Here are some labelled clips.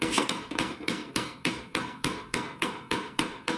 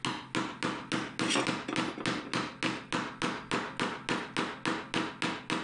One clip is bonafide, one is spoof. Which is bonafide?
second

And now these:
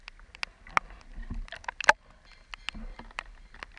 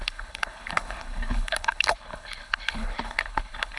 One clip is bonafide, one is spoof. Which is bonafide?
first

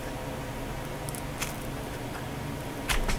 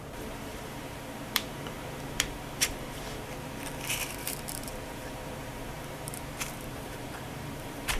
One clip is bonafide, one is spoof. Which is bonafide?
first